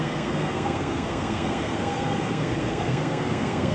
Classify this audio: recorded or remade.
remade